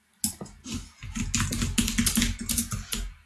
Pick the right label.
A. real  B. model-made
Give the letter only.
A